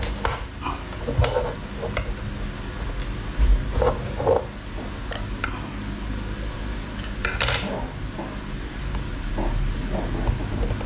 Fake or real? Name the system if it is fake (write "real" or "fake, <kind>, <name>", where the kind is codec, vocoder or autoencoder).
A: real